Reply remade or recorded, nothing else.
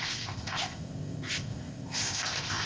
remade